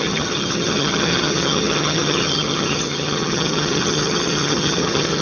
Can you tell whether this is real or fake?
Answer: fake